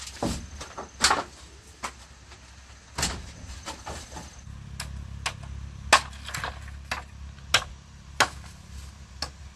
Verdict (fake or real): real